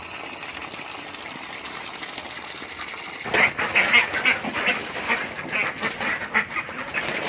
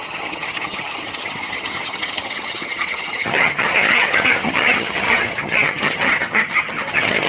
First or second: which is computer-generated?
second